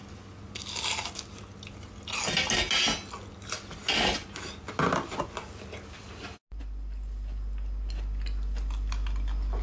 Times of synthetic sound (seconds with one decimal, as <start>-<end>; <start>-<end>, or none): none